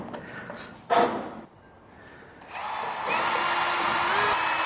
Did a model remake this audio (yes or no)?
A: no